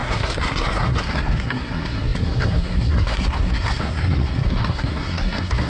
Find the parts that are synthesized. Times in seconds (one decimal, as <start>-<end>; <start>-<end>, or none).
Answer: 0.0-5.7